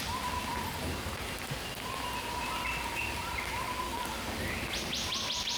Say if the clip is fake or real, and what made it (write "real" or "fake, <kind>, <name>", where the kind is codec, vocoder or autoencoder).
real